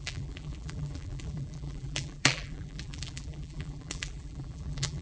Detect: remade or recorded remade